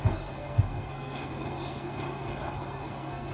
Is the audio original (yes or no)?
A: no